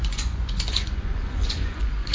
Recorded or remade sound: remade